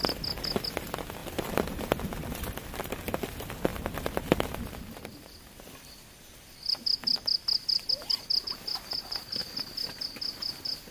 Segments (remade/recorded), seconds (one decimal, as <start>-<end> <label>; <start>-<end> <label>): 0.0-1.2 recorded; 1.2-2.0 remade; 2.0-10.9 recorded